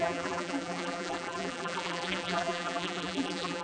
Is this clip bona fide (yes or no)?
no